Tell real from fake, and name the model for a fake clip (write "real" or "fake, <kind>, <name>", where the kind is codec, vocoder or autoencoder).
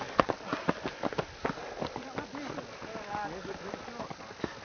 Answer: real